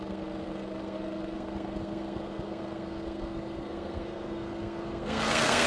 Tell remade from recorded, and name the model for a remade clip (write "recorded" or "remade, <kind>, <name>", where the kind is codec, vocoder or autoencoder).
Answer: remade, codec, SNAC